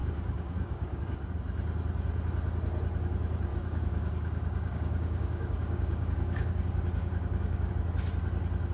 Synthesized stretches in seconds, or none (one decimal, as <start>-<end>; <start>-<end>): 0.0-1.0; 3.5-7.7